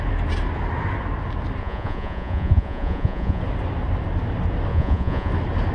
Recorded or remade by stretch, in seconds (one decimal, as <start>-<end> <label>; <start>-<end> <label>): 0.0-1.6 recorded; 1.6-3.4 remade; 3.4-4.7 recorded; 4.7-5.3 remade; 5.3-5.7 recorded